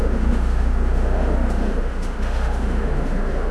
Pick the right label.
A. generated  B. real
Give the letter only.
A